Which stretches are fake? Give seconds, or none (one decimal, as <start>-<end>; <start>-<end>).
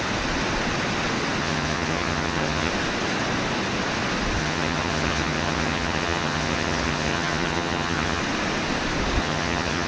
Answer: 1.4-2.7; 4.4-8.2; 9.2-9.9